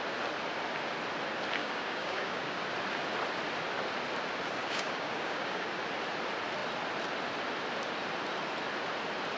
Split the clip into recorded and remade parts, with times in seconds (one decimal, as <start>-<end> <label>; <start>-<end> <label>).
0.0-1.6 recorded; 1.6-2.6 remade; 2.6-4.6 recorded; 4.6-5.8 remade; 5.8-9.4 recorded